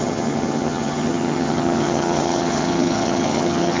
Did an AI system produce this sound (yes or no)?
yes